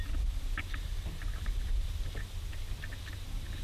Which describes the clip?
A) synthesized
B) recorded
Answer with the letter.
B